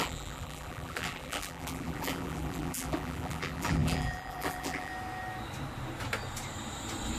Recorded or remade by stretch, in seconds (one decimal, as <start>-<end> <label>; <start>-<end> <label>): 0.0-4.9 remade; 4.9-7.2 recorded